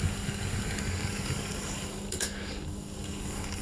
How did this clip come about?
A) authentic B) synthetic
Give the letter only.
B